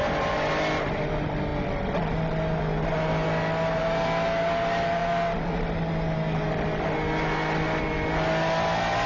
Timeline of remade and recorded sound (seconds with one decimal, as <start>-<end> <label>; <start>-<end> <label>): 0.0-9.1 recorded